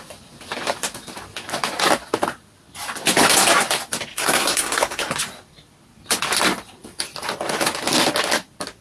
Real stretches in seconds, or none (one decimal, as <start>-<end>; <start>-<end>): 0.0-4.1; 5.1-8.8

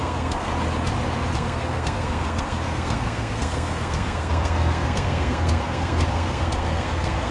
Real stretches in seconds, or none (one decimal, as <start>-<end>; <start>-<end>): 0.5-1.3

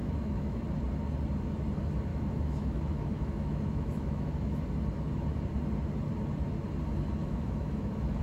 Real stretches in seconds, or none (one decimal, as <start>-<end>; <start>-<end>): 0.6-2.1; 4.6-7.2